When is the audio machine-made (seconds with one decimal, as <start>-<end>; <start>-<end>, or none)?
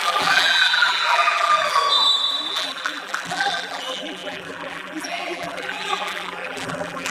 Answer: 0.0-1.8; 2.5-7.1